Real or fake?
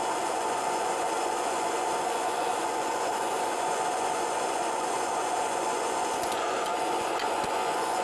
fake